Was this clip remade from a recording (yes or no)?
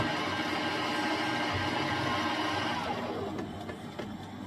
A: no